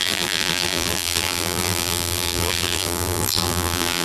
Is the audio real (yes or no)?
no